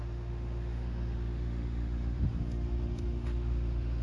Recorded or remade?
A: remade